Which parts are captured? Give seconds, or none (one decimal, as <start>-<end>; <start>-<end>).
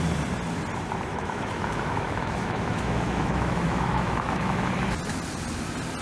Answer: 0.0-1.1; 4.7-6.0